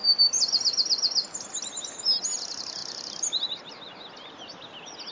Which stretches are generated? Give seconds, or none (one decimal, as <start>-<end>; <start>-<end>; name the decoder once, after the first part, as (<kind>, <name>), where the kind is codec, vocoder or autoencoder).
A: none